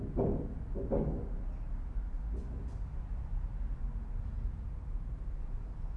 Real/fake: real